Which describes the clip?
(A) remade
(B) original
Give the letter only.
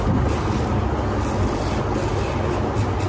B